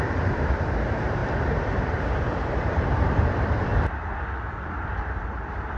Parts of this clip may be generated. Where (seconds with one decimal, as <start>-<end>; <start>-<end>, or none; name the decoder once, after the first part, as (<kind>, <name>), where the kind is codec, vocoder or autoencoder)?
0.0-3.7 (vocoder, BigVGAN v2); 4.6-5.8